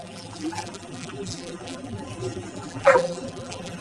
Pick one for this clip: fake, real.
fake